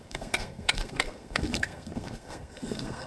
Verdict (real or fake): fake